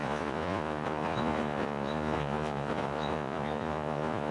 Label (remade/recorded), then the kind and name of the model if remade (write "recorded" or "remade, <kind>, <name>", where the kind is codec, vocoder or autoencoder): remade, vocoder, Vocos